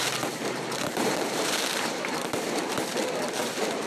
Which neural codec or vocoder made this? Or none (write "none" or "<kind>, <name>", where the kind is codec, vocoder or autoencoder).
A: vocoder, BigVGAN v2